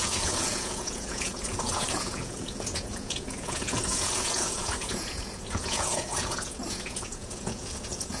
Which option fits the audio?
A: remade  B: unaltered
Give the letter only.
A